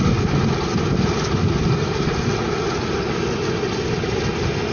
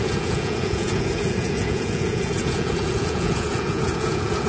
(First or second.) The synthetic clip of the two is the second